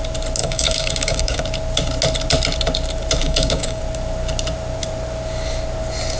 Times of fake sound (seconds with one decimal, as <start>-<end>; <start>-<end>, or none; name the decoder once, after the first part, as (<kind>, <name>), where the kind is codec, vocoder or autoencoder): 0.4-1.4 (codec, DAC); 3.2-3.8